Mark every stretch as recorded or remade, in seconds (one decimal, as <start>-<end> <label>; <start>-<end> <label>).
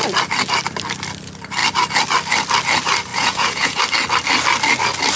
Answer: 0.0-3.1 recorded; 3.1-3.8 remade; 3.8-5.2 recorded